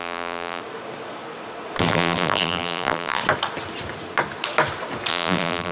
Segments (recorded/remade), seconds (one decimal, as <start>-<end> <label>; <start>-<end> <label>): 0.0-0.6 remade; 0.6-1.8 recorded; 1.8-3.2 remade; 3.2-5.1 recorded; 5.1-5.7 remade